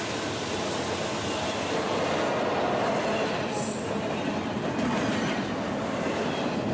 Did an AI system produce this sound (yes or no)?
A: no